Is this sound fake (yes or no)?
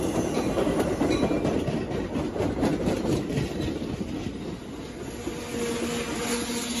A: no